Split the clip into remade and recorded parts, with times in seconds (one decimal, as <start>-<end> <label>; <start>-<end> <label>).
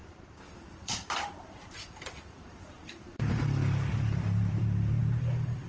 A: 0.0-3.6 remade; 3.6-5.2 recorded; 5.2-5.7 remade